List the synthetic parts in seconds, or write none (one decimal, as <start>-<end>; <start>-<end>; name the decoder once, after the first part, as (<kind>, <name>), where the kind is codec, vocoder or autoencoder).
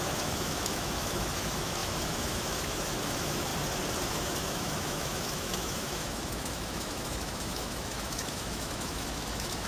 0.0-3.5 (autoencoder, DAC-VAE); 4.1-9.7